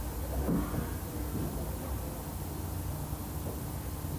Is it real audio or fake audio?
real